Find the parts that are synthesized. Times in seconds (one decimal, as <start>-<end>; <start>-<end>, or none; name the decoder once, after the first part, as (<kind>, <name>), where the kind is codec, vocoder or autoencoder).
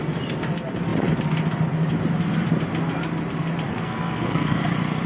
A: 3.7-4.6 (codec, SNAC)